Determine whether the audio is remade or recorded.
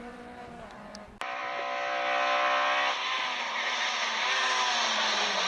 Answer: recorded